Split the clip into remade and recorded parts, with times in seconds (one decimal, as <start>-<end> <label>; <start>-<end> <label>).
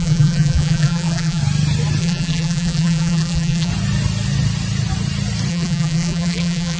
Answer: 0.0-1.4 remade; 1.4-2.0 recorded; 2.0-3.7 remade; 3.7-5.5 recorded; 5.5-6.8 remade